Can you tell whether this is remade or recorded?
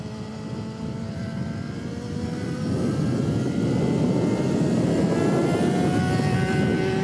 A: recorded